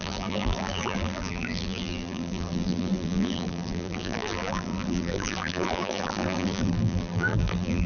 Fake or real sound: fake